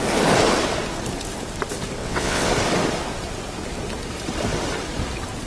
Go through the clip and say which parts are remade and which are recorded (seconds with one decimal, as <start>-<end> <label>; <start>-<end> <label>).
0.0-2.0 recorded; 2.0-2.5 remade; 2.5-5.5 recorded

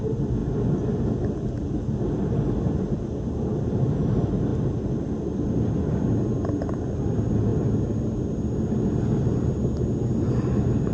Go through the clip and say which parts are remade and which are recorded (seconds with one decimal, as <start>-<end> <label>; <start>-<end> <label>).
0.0-10.9 recorded

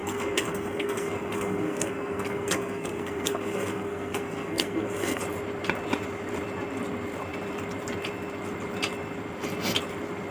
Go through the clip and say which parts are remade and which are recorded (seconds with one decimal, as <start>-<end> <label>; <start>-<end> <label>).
0.0-5.2 remade; 5.2-10.3 recorded

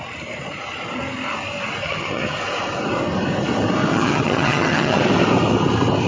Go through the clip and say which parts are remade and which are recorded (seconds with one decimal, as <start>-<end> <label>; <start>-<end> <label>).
0.0-1.8 recorded; 1.8-2.4 remade; 2.4-3.9 recorded; 3.9-5.0 remade; 5.0-6.1 recorded